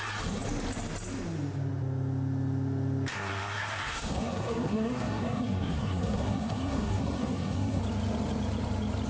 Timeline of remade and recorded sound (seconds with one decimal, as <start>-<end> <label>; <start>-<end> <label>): 0.0-3.1 recorded; 3.1-7.8 remade; 7.8-9.1 recorded